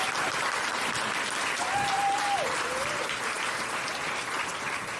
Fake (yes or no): no